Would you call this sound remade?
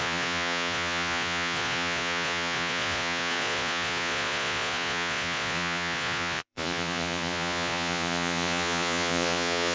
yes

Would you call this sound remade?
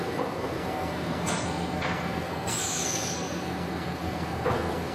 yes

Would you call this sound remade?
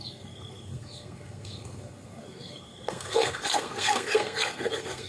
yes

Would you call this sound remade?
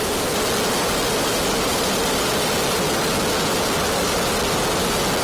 no